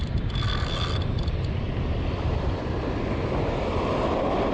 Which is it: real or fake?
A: real